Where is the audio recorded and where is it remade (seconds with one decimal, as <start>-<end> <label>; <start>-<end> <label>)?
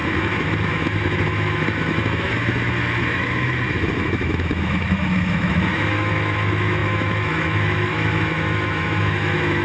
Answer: 0.0-9.6 remade